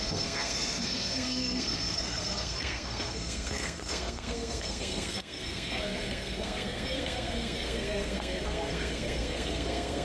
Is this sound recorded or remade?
remade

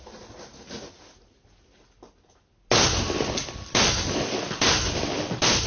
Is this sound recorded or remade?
recorded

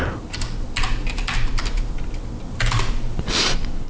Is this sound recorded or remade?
recorded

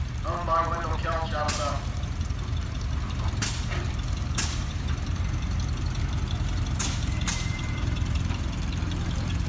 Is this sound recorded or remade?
remade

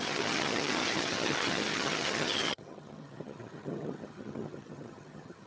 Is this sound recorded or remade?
remade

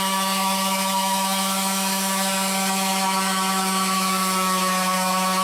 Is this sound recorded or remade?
remade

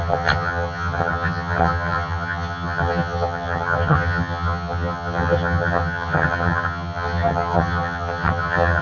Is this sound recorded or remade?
remade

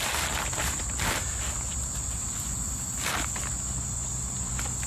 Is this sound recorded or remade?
recorded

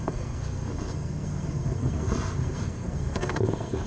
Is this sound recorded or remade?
remade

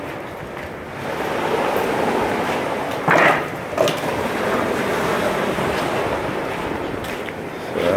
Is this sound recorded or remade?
recorded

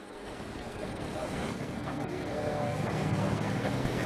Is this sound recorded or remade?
remade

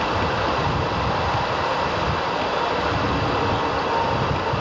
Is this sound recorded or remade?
recorded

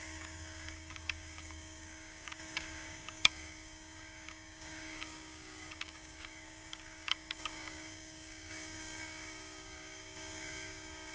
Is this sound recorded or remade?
remade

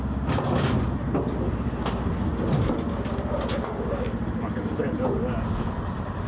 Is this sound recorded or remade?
recorded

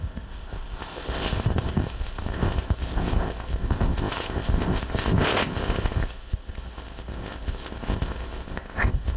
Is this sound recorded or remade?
remade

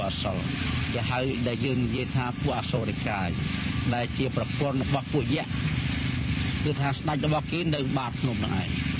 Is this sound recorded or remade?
remade